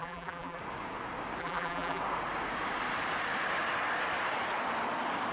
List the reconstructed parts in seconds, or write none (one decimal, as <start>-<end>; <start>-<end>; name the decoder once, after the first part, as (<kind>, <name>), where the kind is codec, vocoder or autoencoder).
0.0-0.6 (vocoder, BigVGAN v2); 1.4-2.0